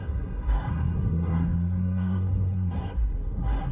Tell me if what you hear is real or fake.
fake